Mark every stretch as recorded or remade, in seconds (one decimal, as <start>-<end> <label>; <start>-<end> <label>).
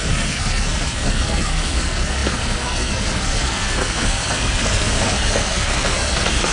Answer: 0.0-6.5 remade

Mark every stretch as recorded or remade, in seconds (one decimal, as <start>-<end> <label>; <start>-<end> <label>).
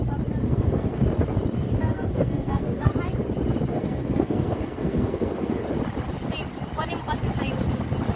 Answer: 0.0-0.4 recorded; 0.4-1.0 remade; 1.0-1.8 recorded; 1.8-2.9 remade; 2.9-3.7 recorded; 3.7-5.6 remade; 5.6-8.2 recorded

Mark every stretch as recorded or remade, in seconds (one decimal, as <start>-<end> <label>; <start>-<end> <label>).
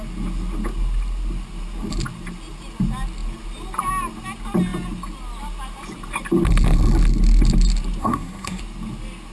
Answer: 0.0-8.0 recorded; 8.0-8.6 remade; 8.6-9.3 recorded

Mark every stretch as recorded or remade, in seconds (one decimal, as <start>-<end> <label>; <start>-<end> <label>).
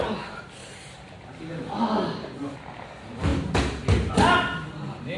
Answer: 0.0-5.2 recorded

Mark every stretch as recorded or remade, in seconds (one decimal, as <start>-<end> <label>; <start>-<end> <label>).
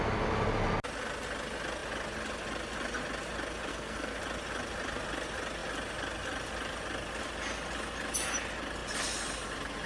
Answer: 0.0-3.7 recorded; 3.7-4.2 remade; 4.2-9.9 recorded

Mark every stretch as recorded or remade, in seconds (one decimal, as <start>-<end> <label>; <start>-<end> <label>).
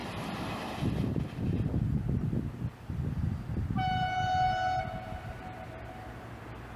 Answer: 0.0-6.8 recorded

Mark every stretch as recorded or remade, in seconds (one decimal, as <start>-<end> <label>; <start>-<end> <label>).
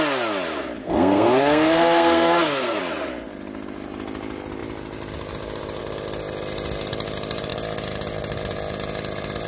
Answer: 0.0-0.8 recorded; 0.8-2.8 remade; 2.8-9.5 recorded